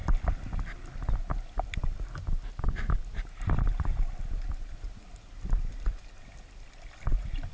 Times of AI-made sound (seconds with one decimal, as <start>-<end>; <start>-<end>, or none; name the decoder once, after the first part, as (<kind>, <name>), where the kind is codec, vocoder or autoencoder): none